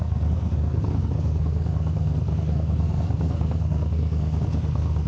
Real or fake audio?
fake